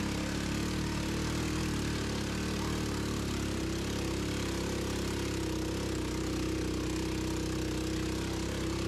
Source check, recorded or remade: recorded